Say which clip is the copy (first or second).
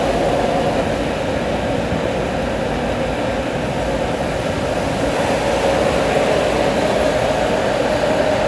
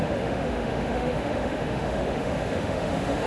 second